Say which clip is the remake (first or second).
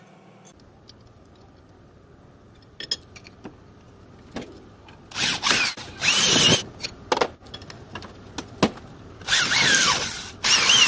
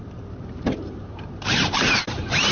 second